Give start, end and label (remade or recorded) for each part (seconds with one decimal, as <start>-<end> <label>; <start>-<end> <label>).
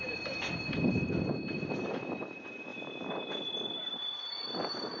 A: 0.0-2.7 recorded; 2.7-5.0 remade